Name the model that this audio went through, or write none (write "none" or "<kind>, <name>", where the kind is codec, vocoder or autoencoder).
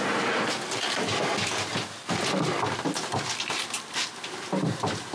none